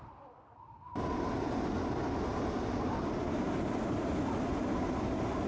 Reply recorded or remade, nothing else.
recorded